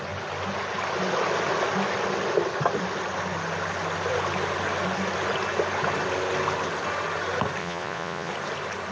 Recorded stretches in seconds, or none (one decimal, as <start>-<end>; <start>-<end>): 0.0-7.6; 8.3-8.9